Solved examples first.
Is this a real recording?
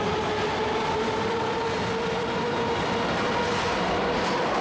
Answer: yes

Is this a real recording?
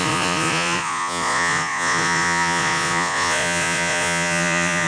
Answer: no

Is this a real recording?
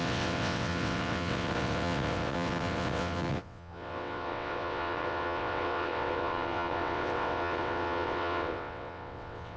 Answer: no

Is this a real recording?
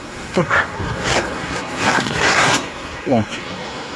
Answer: no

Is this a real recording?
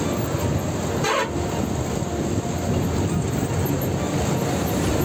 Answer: yes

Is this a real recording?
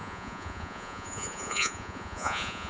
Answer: no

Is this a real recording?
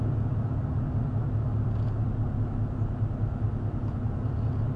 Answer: yes